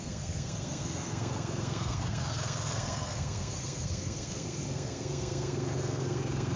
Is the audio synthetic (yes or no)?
yes